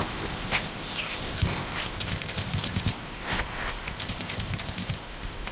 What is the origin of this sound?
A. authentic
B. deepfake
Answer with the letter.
B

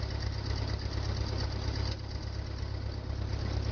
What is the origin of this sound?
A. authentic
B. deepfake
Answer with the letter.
A